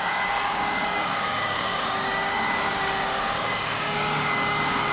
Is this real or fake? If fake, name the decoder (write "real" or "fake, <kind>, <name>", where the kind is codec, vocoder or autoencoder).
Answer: fake, codec, DAC